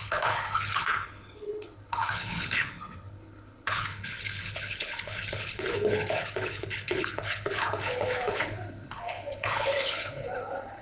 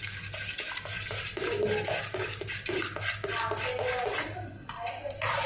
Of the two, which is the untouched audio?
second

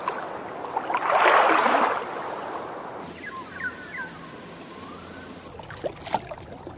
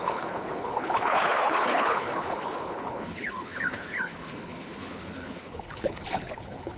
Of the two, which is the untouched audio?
first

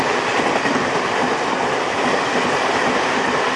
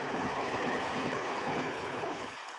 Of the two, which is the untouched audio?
first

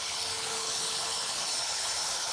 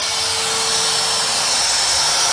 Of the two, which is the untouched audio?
second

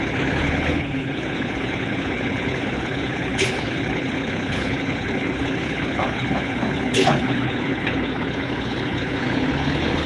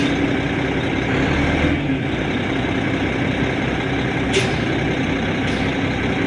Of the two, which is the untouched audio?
second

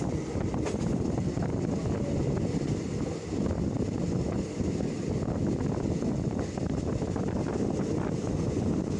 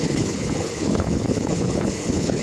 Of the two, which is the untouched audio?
first